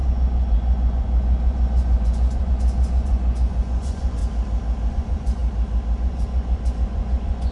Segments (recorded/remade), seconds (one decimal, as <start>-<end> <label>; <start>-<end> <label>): 0.0-4.2 remade; 4.2-4.9 recorded; 4.9-5.4 remade; 5.4-6.0 recorded; 6.0-7.5 remade